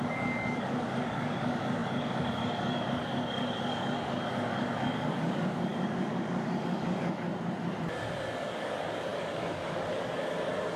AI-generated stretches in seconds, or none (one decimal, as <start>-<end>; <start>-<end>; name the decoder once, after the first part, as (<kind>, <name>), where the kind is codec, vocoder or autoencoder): 0.0-7.3 (codec, DAC); 8.4-10.8